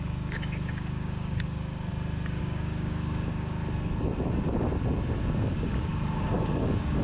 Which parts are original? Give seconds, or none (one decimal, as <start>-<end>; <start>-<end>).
1.9-2.4; 3.6-5.5